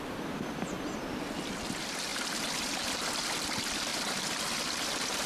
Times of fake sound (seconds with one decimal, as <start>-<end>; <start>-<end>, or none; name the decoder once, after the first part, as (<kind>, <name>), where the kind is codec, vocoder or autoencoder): none